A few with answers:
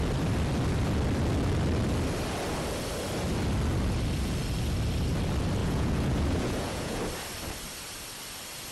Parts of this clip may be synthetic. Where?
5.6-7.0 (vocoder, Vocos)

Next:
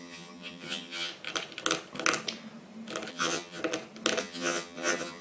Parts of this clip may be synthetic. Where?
0.0-1.1 (vocoder, HiFi-GAN); 3.1-3.6; 4.2-5.2

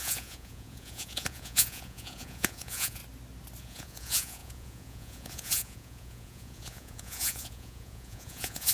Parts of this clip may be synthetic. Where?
0.0-3.0 (vocoder, Vocos); 3.6-8.7

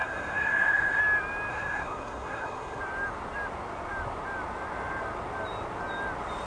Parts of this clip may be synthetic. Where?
0.0-1.0 (codec, SNAC); 1.5-2.8